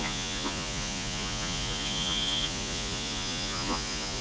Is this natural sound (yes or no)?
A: no